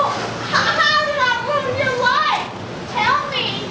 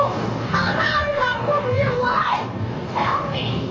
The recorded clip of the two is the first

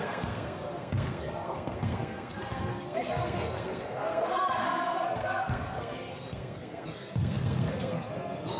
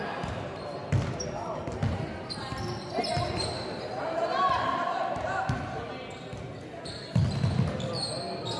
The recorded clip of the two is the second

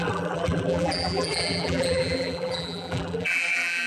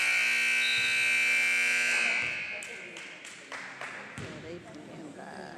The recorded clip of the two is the second